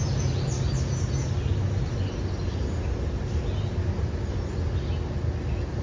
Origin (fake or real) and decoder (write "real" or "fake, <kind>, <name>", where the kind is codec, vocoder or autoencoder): real